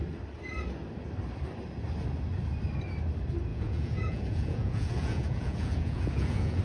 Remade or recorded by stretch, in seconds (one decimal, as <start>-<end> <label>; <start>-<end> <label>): 0.0-3.5 recorded; 3.5-6.6 remade